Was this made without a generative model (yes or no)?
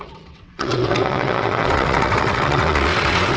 no